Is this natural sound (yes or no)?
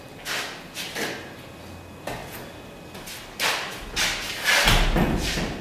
yes